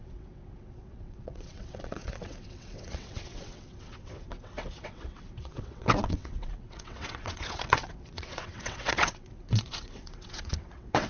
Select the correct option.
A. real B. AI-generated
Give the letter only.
B